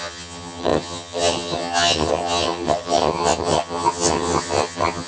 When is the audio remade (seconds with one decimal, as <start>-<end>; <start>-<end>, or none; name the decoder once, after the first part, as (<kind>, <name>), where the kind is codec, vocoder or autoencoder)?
0.0-5.1 (vocoder, HiFi-GAN)